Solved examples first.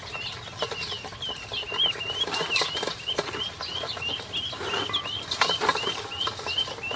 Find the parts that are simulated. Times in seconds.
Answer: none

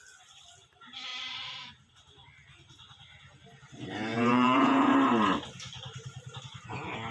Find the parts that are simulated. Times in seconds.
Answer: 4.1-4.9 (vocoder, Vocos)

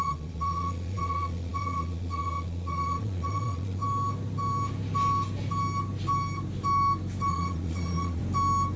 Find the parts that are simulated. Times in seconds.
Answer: 0.0-3.8 (vocoder, Vocos); 7.3-8.2

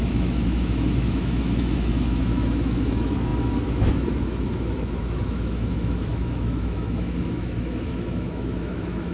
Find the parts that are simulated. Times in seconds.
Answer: 0.0-9.1 (autoencoder, DAC-VAE)

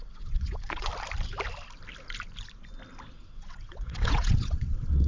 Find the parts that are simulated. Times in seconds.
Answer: 0.0-0.9 (vocoder, WaveNeXt); 3.1-5.1

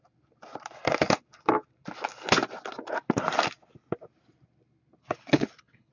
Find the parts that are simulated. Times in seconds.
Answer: 5.0-5.9 (codec, HILCodec)

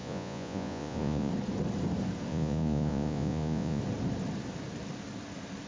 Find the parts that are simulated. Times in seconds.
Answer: 0.0-1.3 (vocoder, Vocos); 2.3-3.8

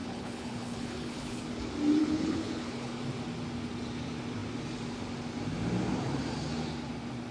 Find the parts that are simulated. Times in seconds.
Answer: 0.0-1.4 (codec, HILCodec); 2.0-3.0